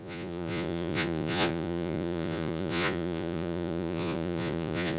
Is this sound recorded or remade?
remade